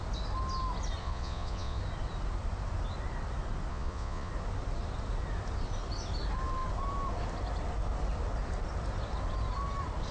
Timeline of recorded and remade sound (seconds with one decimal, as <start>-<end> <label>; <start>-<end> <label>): 0.0-1.0 recorded; 1.0-1.8 remade; 1.8-3.7 recorded; 3.7-4.3 remade; 4.3-10.1 recorded